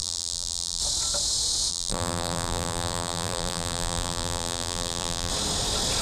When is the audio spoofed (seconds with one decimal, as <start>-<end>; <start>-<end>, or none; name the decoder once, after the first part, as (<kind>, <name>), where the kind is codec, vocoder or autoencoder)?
0.0-0.8 (vocoder, BigVGAN v2); 1.7-5.3